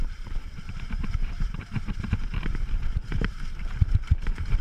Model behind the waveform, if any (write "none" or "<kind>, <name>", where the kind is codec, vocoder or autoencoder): vocoder, BigVGAN v2